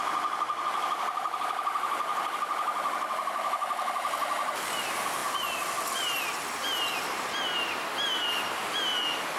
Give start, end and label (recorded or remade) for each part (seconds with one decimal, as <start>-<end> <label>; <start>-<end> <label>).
0.0-9.4 recorded